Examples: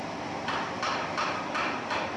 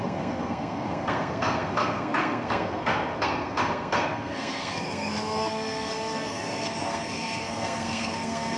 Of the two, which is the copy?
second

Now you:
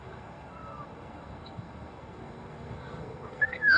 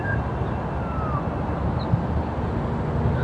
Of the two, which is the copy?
first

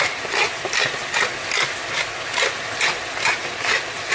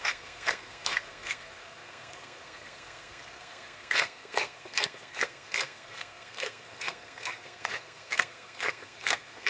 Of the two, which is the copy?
second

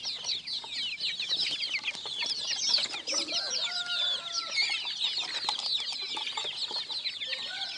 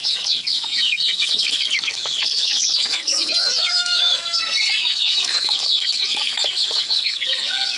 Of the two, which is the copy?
second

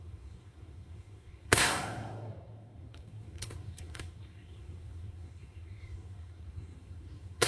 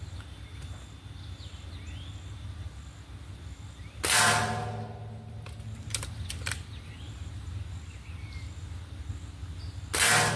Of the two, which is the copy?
first